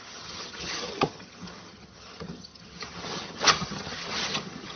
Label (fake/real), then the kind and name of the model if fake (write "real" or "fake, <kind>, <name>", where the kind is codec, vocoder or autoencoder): fake, vocoder, HiFi-GAN